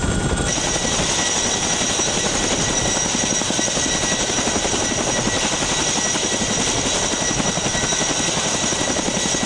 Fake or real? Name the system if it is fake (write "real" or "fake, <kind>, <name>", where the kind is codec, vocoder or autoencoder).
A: real